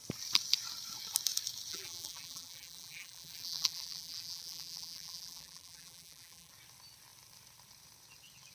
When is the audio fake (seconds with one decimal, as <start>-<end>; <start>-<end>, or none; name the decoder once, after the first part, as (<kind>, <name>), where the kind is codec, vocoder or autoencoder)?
1.7-6.5 (vocoder, BigVGAN v2)